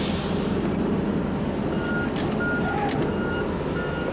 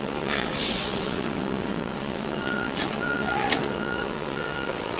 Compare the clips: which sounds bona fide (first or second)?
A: first